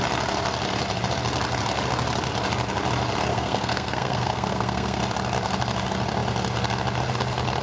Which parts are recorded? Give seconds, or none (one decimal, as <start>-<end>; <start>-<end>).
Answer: 0.0-3.3; 5.0-7.6